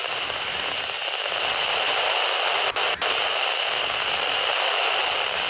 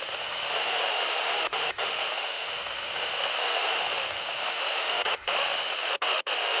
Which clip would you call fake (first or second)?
second